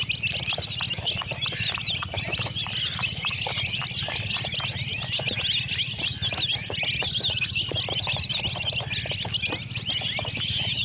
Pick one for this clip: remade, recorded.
recorded